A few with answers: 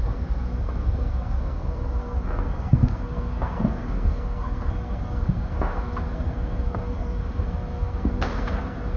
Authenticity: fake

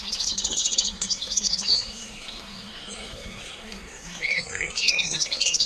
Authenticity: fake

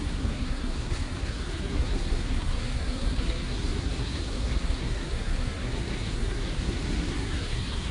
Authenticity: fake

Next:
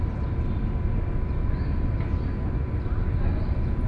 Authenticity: real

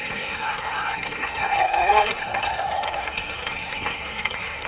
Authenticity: fake